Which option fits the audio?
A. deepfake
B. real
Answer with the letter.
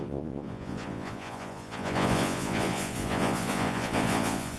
A